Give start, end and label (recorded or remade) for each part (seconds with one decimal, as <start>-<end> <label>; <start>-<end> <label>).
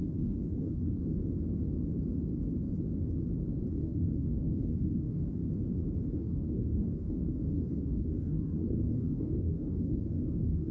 0.0-1.2 remade; 1.2-3.7 recorded; 3.7-5.4 remade; 5.4-6.1 recorded; 6.1-10.7 remade